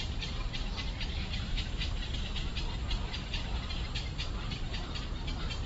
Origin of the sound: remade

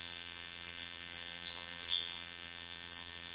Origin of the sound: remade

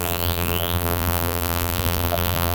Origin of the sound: remade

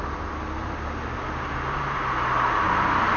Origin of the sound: recorded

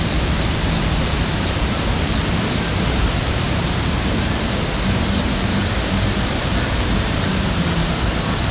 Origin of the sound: remade